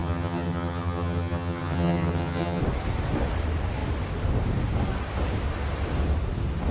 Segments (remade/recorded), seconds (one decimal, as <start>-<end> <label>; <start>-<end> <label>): 0.0-2.6 remade; 2.6-6.7 recorded